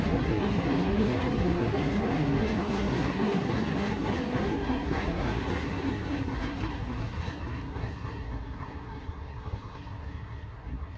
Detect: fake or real fake